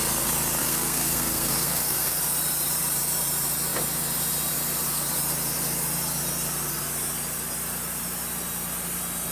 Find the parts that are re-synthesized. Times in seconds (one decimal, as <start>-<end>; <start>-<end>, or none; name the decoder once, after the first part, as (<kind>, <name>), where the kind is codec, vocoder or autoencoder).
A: 0.6-2.2 (codec, SNAC)